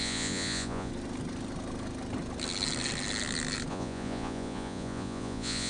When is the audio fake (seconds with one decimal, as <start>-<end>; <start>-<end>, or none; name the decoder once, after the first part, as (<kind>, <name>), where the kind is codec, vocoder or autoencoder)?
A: 0.0-0.9 (vocoder, Vocos); 3.7-5.7